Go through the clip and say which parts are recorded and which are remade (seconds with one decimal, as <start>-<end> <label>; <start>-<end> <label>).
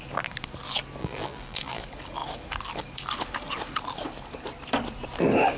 0.0-1.0 recorded; 1.0-1.8 remade; 1.8-5.6 recorded